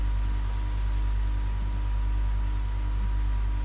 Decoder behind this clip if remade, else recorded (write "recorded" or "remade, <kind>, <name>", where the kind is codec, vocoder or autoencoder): recorded